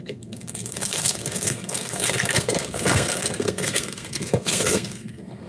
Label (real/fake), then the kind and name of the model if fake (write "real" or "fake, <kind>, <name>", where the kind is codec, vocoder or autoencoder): fake, codec, SNAC